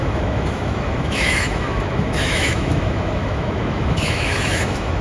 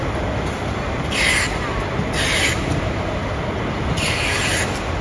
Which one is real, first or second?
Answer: second